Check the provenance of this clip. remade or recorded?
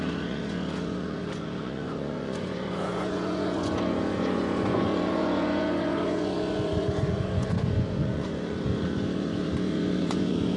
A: remade